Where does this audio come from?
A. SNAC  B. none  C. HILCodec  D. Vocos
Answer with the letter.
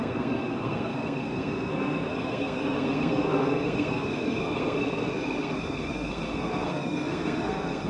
A